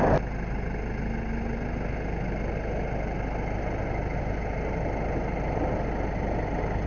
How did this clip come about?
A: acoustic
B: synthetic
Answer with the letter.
A